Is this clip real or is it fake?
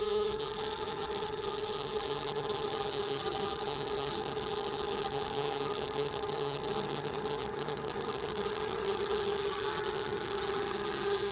fake